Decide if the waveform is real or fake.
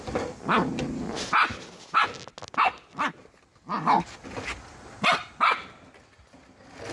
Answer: real